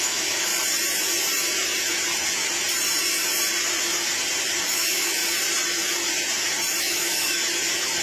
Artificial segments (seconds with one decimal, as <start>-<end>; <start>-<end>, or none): 0.0-0.5; 4.7-5.2; 6.8-7.4